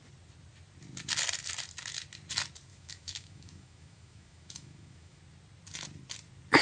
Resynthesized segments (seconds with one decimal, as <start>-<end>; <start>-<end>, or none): 2.7-5.2